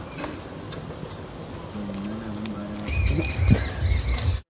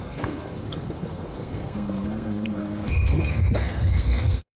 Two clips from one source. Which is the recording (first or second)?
first